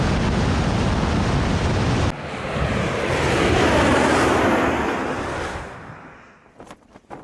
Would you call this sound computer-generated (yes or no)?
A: no